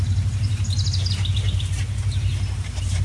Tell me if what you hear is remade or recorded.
recorded